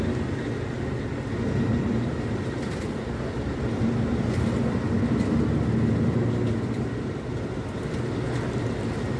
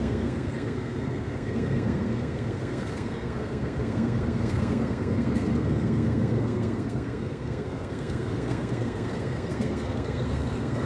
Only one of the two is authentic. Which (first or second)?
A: first